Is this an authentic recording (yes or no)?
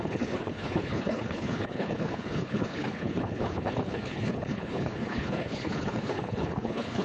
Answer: no